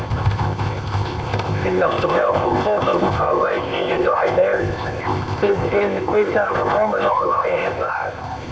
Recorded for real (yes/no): no